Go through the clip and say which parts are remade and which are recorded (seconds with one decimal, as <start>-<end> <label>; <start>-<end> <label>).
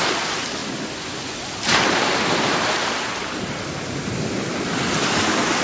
0.0-0.6 recorded; 0.6-1.4 remade; 1.4-5.6 recorded